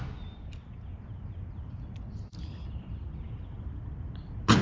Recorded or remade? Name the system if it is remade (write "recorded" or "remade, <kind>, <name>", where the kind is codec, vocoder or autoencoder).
recorded